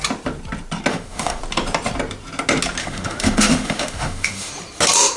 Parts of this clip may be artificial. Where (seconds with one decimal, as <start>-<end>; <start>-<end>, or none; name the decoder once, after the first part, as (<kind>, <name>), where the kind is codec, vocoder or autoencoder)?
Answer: 0.9-1.4 (autoencoder, DAC-VAE); 2.8-4.5

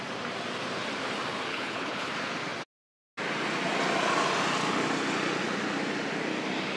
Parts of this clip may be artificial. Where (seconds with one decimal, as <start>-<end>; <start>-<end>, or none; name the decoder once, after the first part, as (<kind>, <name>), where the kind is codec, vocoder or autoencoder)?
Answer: 1.5-2.1 (codec, HILCodec)

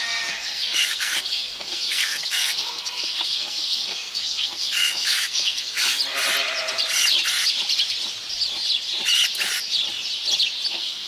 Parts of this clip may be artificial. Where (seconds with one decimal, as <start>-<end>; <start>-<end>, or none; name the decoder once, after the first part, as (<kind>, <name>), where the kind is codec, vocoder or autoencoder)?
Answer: 0.0-6.0 (codec, SNAC); 10.7-11.1